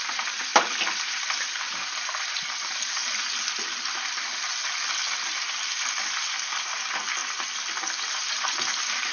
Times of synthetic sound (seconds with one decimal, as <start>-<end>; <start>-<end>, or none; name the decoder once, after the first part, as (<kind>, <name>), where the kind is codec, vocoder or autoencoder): 0.0-0.5 (vocoder, BigVGAN v2); 1.0-3.0; 6.5-7.2; 8.1-9.1